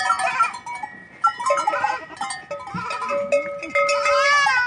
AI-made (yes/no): no